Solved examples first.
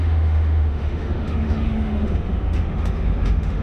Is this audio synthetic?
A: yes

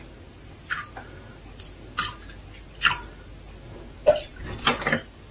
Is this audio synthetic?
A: no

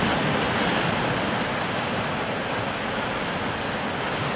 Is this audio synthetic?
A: no